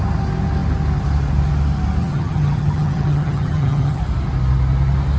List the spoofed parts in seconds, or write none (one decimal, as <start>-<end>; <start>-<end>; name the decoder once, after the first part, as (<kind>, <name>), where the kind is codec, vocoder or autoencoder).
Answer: 2.0-4.0 (vocoder, HiFi-GAN)

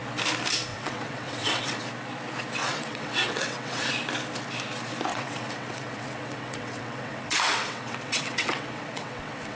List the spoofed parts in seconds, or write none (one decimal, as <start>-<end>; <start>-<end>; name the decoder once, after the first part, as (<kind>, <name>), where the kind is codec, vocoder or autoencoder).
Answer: 0.7-1.8 (vocoder, WaveNeXt); 2.6-3.9; 5.1-9.6